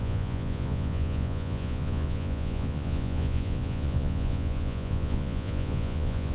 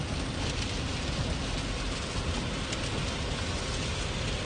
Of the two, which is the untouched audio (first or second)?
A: second